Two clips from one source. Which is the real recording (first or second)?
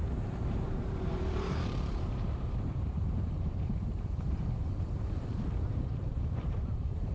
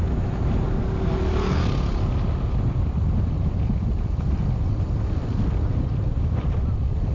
second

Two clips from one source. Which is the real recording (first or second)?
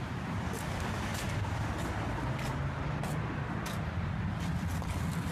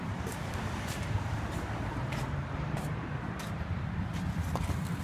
first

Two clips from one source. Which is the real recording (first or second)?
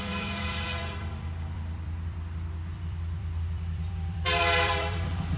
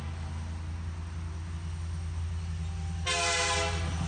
second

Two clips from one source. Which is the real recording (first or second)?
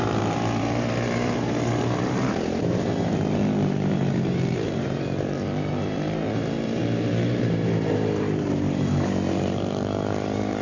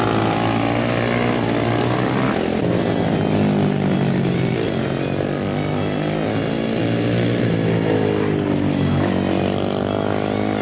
second